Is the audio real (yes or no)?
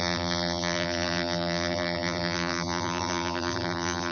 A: no